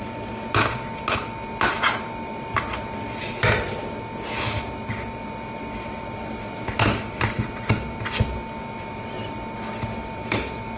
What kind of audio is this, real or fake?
real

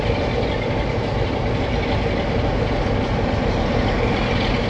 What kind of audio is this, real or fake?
real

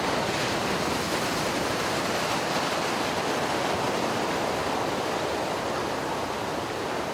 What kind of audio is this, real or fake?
real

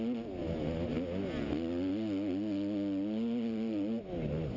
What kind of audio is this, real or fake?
real